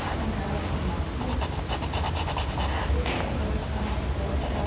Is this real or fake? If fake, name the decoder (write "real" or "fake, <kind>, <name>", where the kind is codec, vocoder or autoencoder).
real